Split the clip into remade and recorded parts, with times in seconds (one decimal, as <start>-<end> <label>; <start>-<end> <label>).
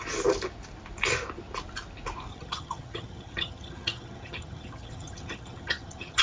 0.0-2.3 recorded; 2.3-6.2 remade